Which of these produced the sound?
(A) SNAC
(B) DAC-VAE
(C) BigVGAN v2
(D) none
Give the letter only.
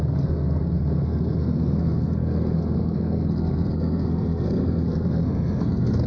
A